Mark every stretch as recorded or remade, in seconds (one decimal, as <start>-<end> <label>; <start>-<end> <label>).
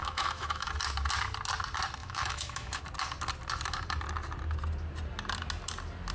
0.0-0.7 remade; 0.7-2.0 recorded; 2.0-2.8 remade; 2.8-6.1 recorded